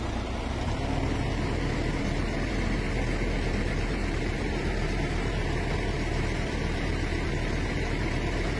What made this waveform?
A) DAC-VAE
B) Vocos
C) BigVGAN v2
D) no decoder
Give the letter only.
C